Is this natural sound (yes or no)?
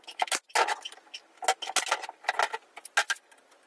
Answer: yes